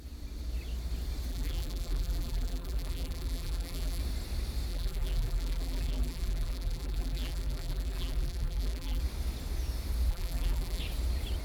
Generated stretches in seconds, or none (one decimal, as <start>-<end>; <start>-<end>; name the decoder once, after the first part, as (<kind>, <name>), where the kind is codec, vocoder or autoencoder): 1.3-4.0 (vocoder, BigVGAN v2); 4.7-9.0; 10.1-10.8